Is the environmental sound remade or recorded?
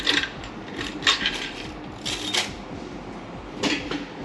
recorded